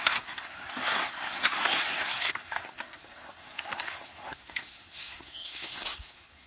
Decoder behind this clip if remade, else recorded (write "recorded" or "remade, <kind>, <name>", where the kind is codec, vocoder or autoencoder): remade, codec, SNAC